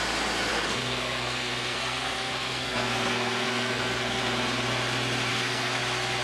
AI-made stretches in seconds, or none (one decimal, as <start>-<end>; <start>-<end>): 0.5-4.2; 5.3-5.8